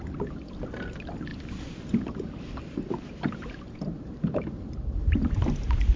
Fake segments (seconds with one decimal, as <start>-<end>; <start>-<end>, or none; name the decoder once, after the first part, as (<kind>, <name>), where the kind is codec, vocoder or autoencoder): none